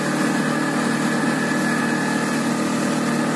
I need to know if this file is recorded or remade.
recorded